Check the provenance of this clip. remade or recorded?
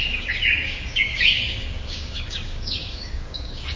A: remade